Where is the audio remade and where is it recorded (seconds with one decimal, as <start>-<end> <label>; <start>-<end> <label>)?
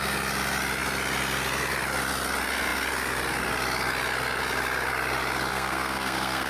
0.0-5.5 recorded; 5.5-6.5 remade